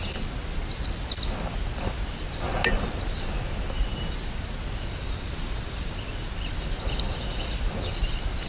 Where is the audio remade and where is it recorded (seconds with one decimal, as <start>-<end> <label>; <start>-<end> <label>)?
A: 0.0-8.5 recorded